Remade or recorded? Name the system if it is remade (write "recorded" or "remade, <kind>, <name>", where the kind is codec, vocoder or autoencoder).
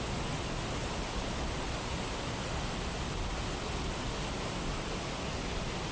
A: recorded